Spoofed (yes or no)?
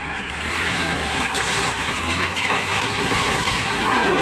yes